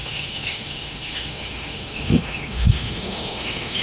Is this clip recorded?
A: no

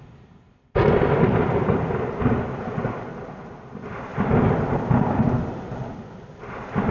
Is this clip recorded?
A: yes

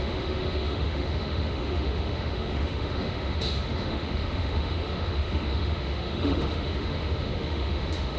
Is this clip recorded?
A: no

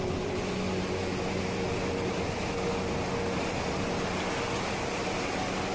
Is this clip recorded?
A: yes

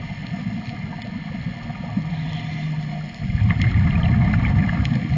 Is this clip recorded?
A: yes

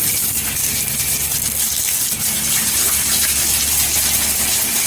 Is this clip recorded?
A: yes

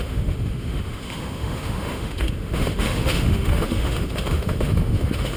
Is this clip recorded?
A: no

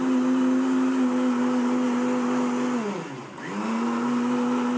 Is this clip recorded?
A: yes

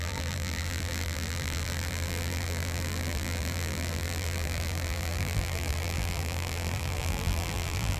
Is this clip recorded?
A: no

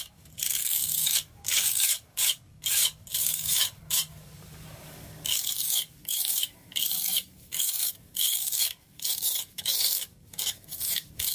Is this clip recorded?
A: no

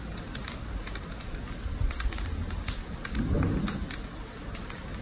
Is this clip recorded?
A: yes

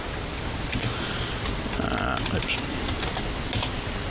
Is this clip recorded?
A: yes